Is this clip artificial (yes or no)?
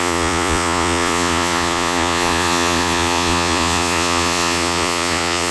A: yes